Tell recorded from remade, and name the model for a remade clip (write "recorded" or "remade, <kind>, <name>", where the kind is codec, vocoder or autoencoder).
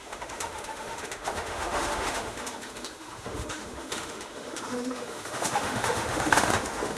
remade, autoencoder, DAC-VAE